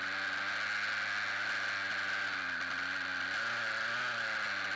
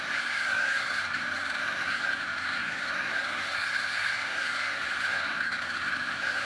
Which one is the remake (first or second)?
second